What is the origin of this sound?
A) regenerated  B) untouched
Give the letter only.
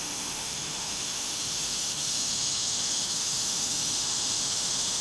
A